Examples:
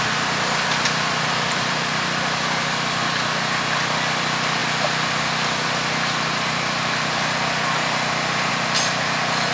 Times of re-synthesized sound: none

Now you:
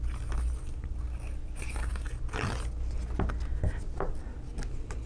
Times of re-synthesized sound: none

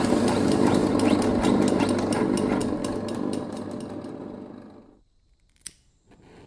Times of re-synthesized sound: 0.8-1.8

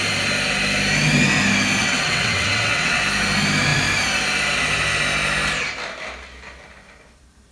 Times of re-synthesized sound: 1.8-3.0